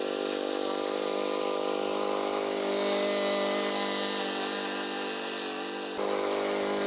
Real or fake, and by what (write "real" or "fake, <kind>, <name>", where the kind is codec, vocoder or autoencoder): real